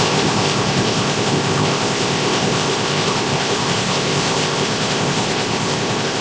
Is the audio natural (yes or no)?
no